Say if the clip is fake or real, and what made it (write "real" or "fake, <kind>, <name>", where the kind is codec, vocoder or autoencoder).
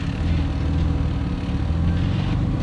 real